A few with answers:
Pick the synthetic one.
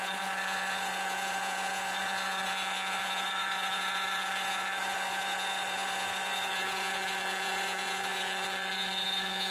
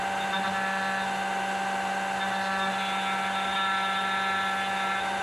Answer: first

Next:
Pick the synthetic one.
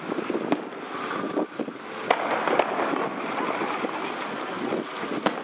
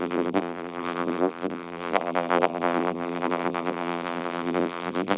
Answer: second